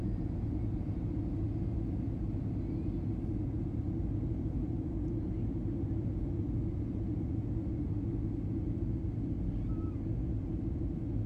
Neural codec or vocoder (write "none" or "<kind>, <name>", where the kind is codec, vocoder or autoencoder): none